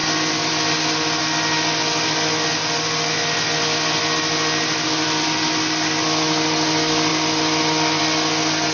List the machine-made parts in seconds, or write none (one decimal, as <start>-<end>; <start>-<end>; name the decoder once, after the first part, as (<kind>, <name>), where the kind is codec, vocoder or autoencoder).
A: none